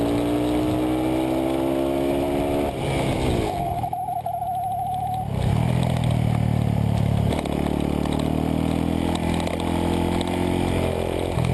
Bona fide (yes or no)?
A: yes